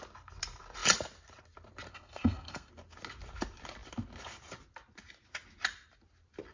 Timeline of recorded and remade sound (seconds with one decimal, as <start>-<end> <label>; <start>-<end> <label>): 0.0-1.9 recorded; 1.9-2.7 remade; 2.7-6.5 recorded